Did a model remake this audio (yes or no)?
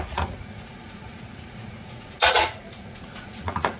yes